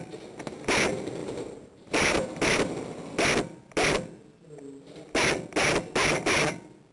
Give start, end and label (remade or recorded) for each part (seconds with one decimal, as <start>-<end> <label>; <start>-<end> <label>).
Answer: 0.0-1.2 recorded; 1.2-2.7 remade; 2.7-6.9 recorded